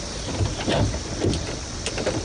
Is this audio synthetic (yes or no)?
no